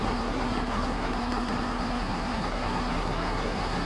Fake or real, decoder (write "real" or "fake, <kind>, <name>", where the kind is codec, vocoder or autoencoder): fake, codec, SNAC